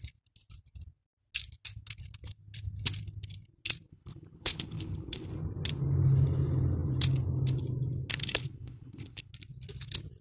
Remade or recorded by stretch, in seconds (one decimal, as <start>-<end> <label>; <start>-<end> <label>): 0.0-3.9 recorded; 3.9-5.3 remade; 5.3-8.2 recorded; 8.2-9.3 remade; 9.3-10.2 recorded